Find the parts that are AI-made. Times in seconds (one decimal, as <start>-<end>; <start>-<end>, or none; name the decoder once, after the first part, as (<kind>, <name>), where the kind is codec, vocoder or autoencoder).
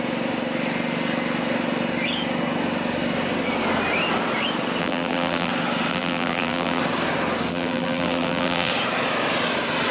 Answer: 4.8-5.5 (vocoder, BigVGAN v2); 5.9-6.8; 7.5-8.7